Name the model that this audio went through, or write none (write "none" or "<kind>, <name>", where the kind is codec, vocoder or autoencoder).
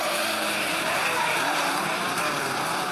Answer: vocoder, BigVGAN v2